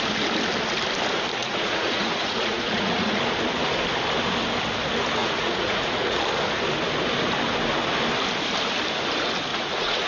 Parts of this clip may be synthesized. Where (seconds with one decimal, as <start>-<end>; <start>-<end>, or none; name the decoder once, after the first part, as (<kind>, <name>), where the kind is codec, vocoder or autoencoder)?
1.4-3.1 (vocoder, Vocos); 5.2-6.2; 9.5-10.1